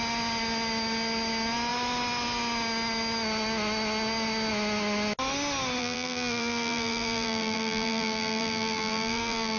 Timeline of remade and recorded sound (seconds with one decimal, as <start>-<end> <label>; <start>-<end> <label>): 0.0-5.8 recorded; 5.8-9.6 remade